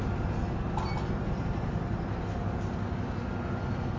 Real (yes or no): yes